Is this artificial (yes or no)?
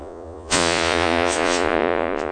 yes